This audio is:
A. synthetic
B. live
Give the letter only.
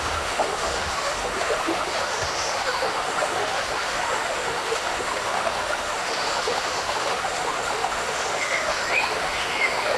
A